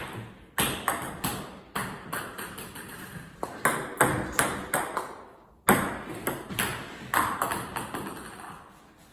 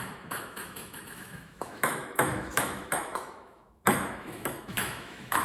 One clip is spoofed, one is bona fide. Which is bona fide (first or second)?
first